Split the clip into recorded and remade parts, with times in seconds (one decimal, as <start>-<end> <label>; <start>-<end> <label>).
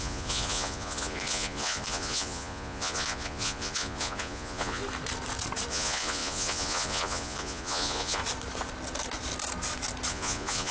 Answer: 0.0-4.8 remade; 4.8-5.7 recorded; 5.7-8.2 remade; 8.2-10.1 recorded; 10.1-10.7 remade